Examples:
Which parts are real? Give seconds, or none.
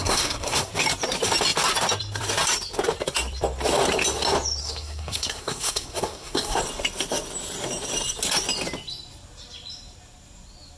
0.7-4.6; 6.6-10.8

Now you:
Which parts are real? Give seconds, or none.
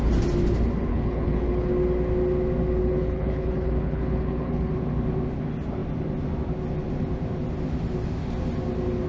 0.0-0.9; 1.7-2.8; 4.7-9.1